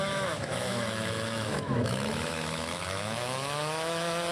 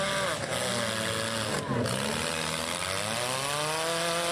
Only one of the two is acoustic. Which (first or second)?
second